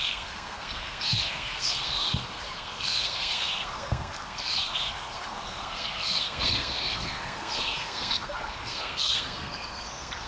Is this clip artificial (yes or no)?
yes